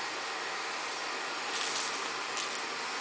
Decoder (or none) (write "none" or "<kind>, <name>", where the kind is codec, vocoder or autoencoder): none